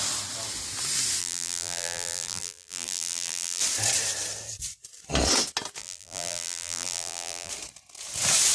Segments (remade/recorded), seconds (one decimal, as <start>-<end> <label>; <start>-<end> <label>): 0.0-1.2 recorded; 1.2-3.6 remade; 3.6-5.8 recorded; 5.8-7.5 remade; 7.5-8.5 recorded